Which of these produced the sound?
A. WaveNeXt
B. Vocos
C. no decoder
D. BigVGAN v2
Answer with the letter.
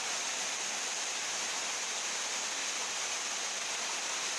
D